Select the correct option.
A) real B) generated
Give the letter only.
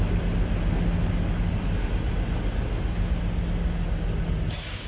A